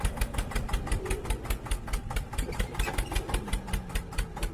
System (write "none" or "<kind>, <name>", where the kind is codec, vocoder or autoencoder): none